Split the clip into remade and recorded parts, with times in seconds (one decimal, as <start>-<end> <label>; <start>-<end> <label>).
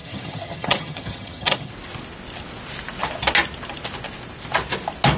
0.0-1.7 remade; 1.7-5.2 recorded